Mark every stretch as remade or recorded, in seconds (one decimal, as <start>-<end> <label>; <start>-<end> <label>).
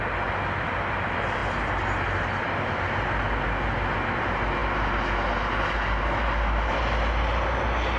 0.0-8.0 recorded